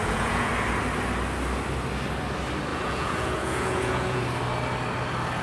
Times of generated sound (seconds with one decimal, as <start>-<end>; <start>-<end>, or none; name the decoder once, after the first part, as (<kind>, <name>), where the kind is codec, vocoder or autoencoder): 0.0-0.5 (vocoder, Vocos); 2.7-4.2